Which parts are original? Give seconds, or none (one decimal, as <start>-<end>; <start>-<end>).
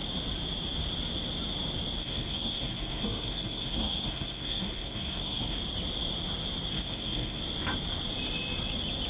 0.0-2.0; 5.6-6.7; 7.4-9.1